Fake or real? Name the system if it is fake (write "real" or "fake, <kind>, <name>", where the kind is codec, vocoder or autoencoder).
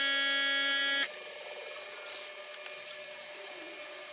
real